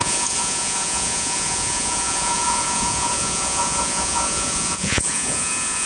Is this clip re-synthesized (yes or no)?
yes